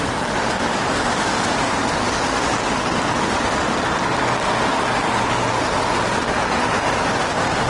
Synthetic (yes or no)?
no